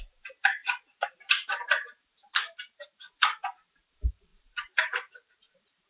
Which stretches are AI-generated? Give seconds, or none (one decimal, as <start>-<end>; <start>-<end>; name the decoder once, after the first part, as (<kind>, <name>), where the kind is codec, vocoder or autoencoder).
0.0-5.9 (vocoder, BigVGAN v2)